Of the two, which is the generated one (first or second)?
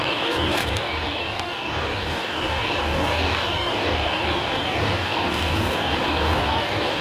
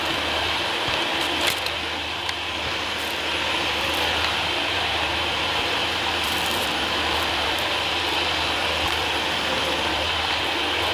first